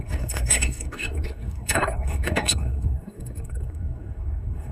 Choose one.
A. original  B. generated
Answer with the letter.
B